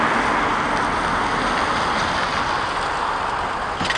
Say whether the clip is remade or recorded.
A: recorded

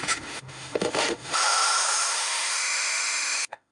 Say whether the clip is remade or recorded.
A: remade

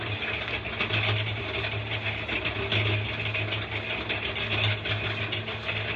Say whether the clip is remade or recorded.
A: recorded